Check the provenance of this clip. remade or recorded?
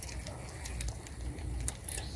recorded